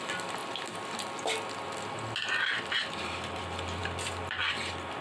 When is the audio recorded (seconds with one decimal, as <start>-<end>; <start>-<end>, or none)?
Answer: 0.0-5.0